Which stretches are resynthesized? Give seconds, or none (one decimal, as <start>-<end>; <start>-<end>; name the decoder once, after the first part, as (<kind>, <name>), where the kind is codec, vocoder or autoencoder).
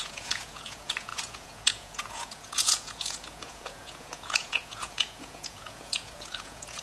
0.0-6.8 (vocoder, Vocos)